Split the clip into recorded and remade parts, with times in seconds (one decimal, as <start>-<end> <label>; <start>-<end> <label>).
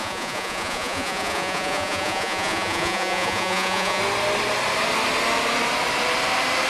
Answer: 0.0-4.0 remade; 4.0-6.7 recorded